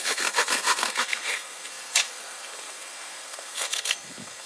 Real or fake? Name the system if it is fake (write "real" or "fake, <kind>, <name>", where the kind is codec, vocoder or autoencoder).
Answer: fake, codec, SNAC